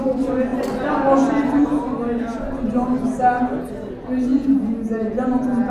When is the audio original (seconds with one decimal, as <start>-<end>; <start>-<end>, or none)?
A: 0.0-4.3